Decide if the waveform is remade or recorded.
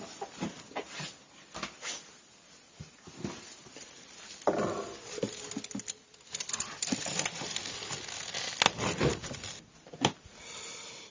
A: recorded